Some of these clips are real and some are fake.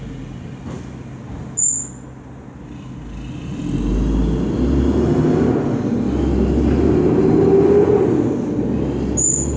real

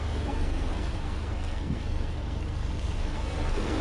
fake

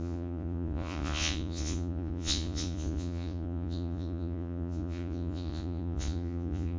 fake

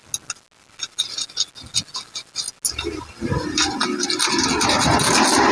real